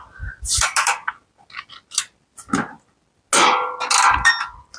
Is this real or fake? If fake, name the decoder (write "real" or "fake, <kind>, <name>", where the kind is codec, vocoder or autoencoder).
real